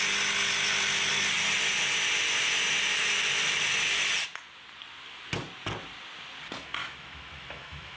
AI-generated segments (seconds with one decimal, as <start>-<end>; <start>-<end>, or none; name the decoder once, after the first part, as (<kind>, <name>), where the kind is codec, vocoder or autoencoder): 6.8-8.0 (autoencoder, DAC-VAE)